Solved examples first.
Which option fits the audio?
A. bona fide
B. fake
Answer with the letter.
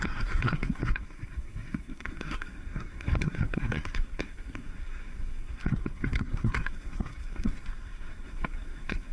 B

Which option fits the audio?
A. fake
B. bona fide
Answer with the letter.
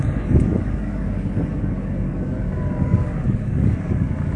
A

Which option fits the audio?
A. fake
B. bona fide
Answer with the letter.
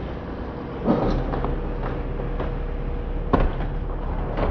B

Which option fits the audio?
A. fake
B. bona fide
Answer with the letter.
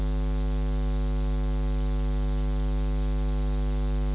B